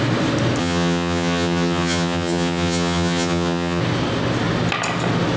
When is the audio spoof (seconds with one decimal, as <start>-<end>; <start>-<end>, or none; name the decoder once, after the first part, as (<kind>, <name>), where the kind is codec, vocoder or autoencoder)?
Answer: 0.6-3.8 (vocoder, HiFi-GAN)